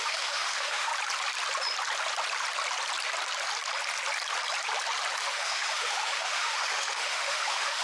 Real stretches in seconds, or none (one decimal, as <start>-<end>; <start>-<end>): 0.9-5.2